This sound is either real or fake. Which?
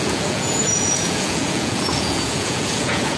fake